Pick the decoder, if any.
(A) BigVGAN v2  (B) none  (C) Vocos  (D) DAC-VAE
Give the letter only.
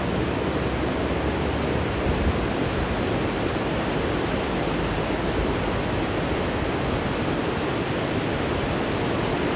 B